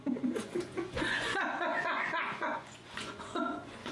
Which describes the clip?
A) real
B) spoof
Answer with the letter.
B